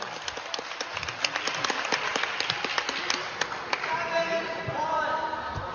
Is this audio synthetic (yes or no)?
no